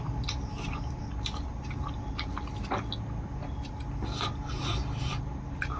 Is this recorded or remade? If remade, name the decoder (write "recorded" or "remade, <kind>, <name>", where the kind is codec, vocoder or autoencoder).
recorded